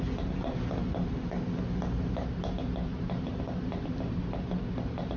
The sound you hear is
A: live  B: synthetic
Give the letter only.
A